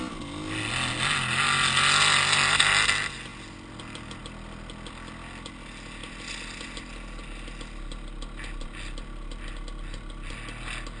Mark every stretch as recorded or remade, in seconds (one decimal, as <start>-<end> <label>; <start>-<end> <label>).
0.0-11.0 recorded